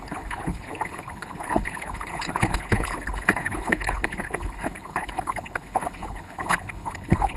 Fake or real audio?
fake